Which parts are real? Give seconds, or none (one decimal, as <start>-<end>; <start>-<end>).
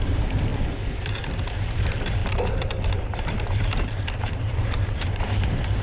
0.5-1.2; 2.2-2.9